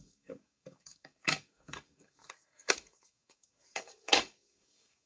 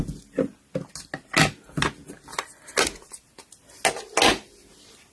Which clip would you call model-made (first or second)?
first